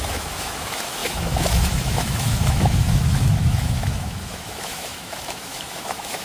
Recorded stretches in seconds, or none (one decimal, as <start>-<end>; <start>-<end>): none